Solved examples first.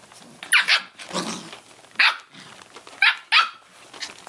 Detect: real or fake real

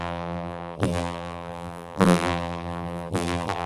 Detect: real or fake fake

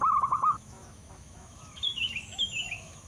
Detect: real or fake fake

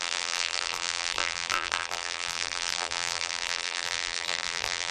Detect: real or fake fake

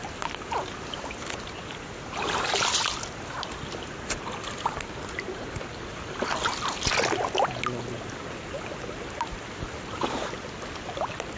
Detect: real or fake real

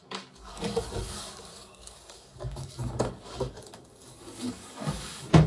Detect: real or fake fake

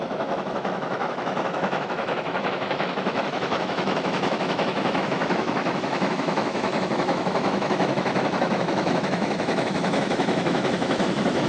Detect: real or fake fake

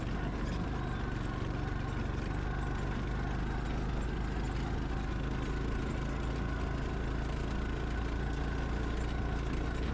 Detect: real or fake real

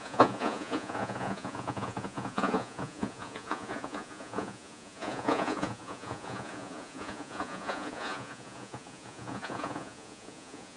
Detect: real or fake fake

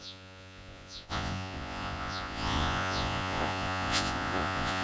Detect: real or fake fake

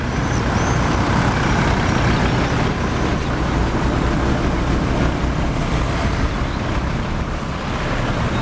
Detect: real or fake real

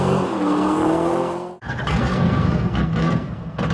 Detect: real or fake fake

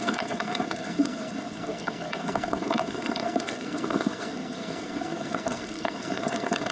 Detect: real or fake fake